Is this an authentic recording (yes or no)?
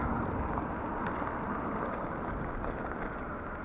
yes